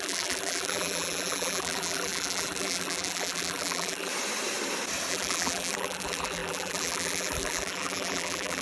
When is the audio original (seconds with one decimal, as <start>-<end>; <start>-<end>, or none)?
4.1-5.1